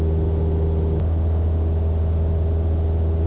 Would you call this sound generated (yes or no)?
no